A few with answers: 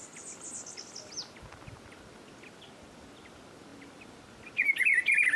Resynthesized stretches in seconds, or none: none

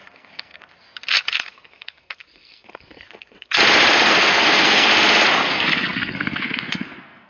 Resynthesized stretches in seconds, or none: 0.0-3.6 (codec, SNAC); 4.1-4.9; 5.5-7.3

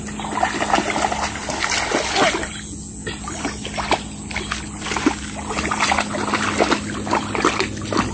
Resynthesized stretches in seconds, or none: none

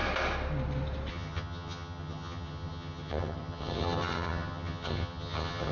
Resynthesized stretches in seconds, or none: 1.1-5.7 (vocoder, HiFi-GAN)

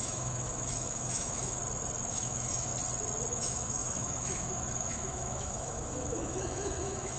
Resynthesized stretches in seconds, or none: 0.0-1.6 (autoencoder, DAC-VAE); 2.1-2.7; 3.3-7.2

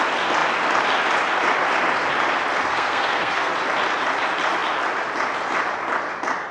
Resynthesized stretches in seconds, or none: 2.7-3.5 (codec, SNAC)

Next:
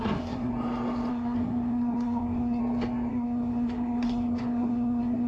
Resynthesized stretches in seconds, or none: 0.0-0.5 (codec, SNAC); 1.1-2.6; 3.1-5.3